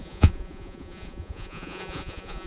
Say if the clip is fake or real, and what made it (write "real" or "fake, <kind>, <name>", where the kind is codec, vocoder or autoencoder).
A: fake, vocoder, Vocos